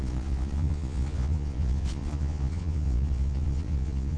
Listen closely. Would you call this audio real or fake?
fake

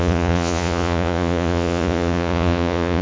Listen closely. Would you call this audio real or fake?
fake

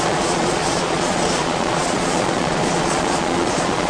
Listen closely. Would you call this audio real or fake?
fake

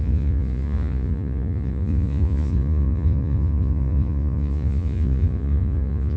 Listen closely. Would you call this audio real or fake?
fake